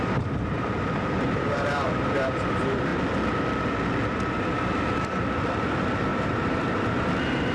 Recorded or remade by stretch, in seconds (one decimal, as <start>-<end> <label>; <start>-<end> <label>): 0.0-2.9 remade; 2.9-4.4 recorded; 4.4-7.5 remade